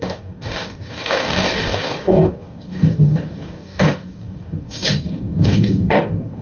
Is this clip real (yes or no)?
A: no